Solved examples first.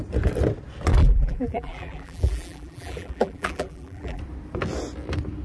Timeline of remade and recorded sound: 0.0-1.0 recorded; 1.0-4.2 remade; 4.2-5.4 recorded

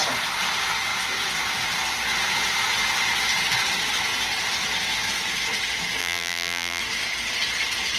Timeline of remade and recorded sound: 0.0-6.0 recorded; 6.0-6.8 remade; 6.8-8.0 recorded

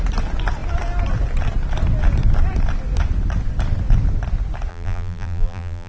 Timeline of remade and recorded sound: 0.0-4.7 recorded; 4.7-5.9 remade

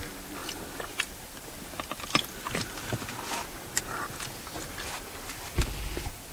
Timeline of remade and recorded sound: 0.0-6.3 recorded